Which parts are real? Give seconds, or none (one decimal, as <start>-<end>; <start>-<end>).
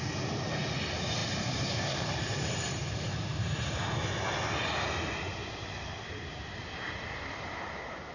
0.0-1.2; 3.9-5.4; 6.6-8.1